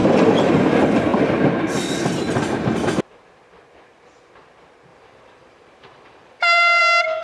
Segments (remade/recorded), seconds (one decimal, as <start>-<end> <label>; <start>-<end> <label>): 0.0-0.5 remade; 0.5-4.9 recorded; 4.9-6.8 remade; 6.8-7.2 recorded